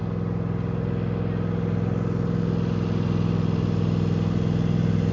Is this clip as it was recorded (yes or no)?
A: yes